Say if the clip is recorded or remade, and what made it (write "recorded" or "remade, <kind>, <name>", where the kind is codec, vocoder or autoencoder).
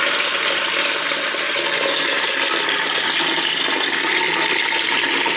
recorded